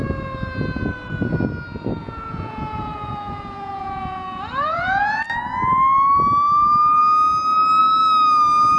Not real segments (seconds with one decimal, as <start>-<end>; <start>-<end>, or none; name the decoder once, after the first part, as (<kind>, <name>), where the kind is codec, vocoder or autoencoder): 2.0-5.2 (vocoder, Vocos)